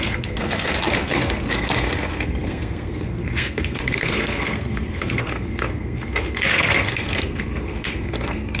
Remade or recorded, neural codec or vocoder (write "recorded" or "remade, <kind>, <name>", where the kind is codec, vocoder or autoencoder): remade, codec, SNAC